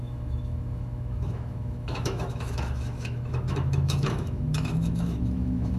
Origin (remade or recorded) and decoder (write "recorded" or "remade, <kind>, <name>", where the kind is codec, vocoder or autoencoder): remade, autoencoder, DAC-VAE